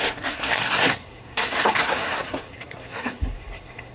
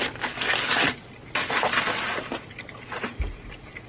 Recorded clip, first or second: second